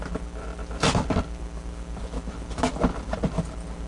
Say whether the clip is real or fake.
real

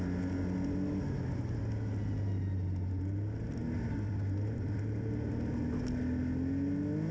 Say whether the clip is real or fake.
real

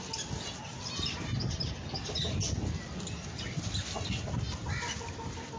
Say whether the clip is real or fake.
real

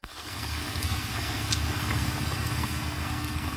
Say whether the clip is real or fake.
fake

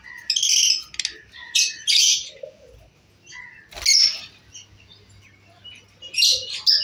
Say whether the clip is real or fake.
real